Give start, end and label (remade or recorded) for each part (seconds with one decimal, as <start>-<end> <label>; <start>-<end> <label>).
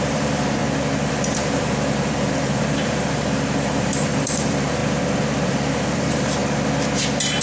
0.0-0.6 remade; 0.6-1.1 recorded; 1.1-4.8 remade; 4.8-5.5 recorded; 5.5-6.4 remade; 6.4-7.4 recorded